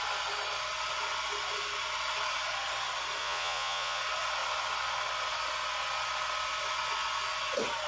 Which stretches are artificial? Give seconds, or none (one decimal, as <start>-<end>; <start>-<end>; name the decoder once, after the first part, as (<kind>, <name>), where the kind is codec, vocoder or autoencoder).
3.2-4.0 (vocoder, Vocos)